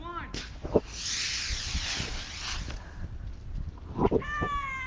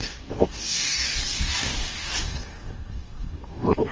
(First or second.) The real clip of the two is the first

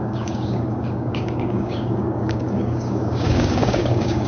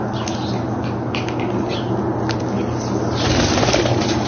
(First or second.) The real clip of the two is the second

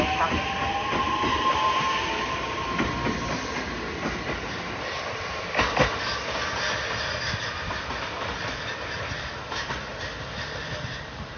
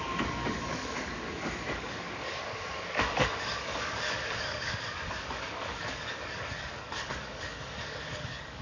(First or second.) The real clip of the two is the first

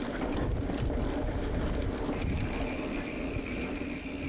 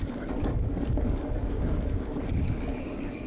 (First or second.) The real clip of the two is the first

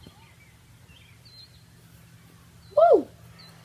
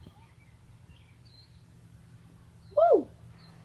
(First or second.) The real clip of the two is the first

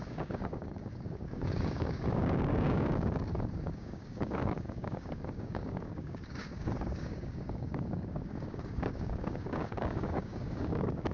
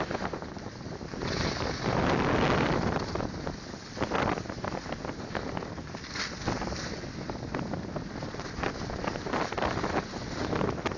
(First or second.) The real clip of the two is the second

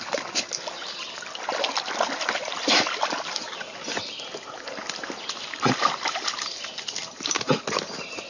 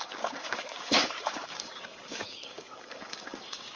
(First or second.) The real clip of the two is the first